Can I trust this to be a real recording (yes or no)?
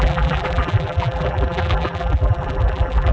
no